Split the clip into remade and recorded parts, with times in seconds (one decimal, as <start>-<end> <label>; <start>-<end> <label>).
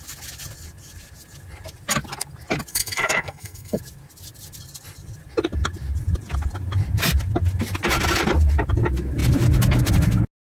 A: 0.0-2.7 recorded; 2.7-3.8 remade; 3.8-10.4 recorded